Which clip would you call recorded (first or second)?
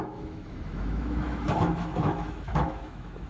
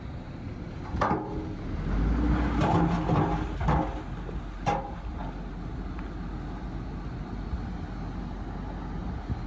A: second